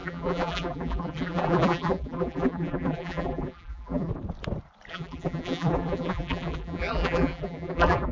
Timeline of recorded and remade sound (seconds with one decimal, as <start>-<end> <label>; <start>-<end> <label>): 0.0-4.1 remade; 4.1-4.9 recorded; 4.9-8.1 remade